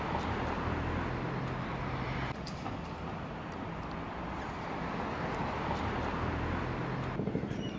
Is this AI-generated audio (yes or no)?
no